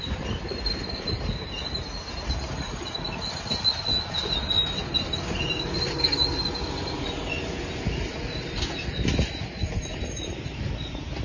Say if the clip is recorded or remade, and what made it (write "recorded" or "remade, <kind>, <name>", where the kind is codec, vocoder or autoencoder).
recorded